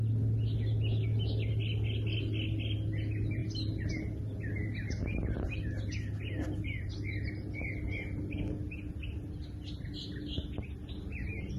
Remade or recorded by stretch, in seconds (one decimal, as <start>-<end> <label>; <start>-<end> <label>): 0.0-11.6 recorded